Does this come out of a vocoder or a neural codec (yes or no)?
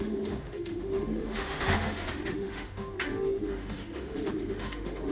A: yes